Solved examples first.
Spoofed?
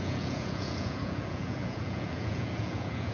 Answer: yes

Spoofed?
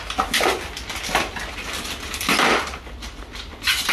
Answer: no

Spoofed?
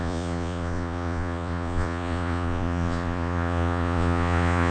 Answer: yes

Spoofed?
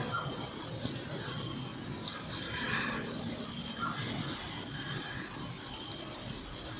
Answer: no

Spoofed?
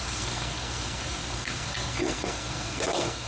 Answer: yes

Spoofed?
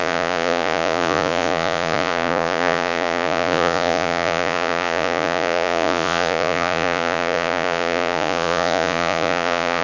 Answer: yes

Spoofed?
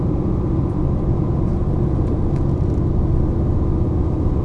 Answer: no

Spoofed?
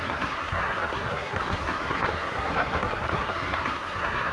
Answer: yes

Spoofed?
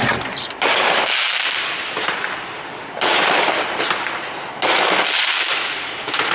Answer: no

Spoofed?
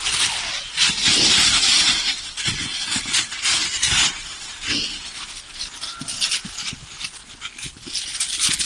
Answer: no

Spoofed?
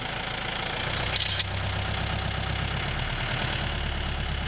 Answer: no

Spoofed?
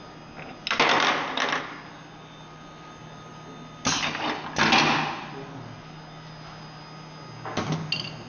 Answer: no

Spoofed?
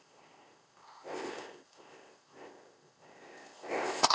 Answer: yes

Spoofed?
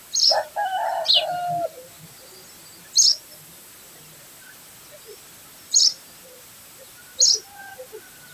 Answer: no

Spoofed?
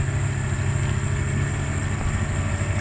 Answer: no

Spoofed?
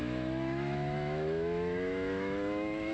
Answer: yes